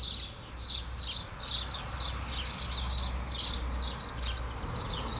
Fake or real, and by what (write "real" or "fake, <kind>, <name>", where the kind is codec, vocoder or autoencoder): real